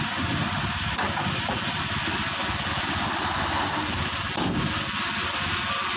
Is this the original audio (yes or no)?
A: yes